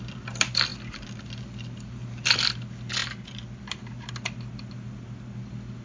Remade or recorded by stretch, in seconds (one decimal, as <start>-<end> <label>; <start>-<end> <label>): 0.0-5.8 recorded